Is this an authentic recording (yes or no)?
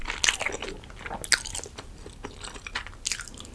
yes